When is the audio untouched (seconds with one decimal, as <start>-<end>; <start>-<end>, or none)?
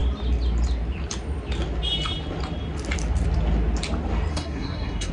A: 0.0-4.3